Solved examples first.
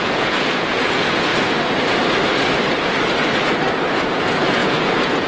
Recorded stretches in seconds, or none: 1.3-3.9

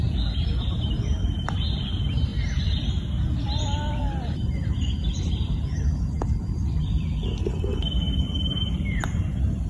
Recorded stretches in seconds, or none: 2.3-3.9; 6.6-8.6

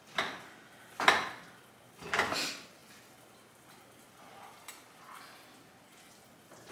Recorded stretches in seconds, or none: 0.0-6.7

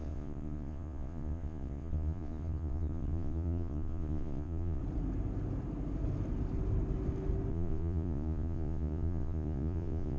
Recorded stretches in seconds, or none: 4.8-7.5

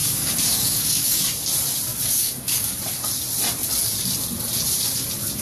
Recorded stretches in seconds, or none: 1.2-1.9; 2.8-5.4

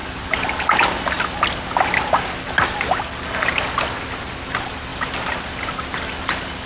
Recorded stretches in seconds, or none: 0.0-6.7